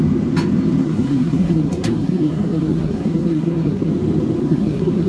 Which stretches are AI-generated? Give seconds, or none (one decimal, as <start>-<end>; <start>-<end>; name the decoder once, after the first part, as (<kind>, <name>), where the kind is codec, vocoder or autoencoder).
0.8-3.9 (codec, SNAC); 4.4-5.1